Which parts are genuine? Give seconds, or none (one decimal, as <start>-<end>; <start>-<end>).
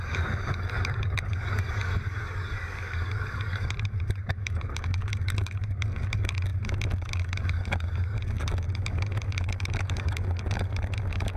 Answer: none